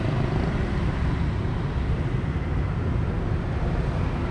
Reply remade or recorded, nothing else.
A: recorded